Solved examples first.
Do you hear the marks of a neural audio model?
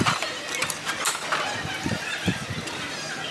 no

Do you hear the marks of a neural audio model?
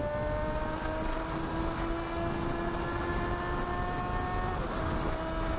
no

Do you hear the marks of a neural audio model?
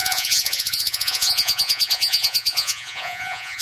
yes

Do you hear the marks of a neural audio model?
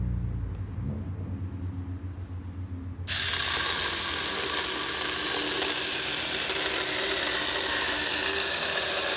no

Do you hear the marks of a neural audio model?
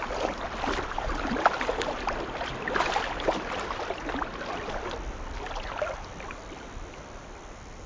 no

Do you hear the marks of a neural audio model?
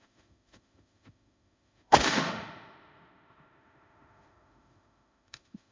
yes